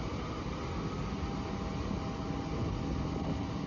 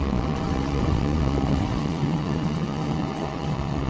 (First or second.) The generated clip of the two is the second